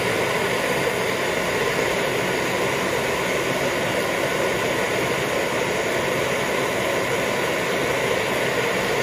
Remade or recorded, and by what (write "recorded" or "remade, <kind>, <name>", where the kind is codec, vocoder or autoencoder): recorded